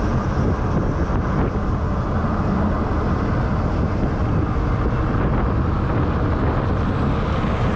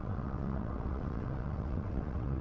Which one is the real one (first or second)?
first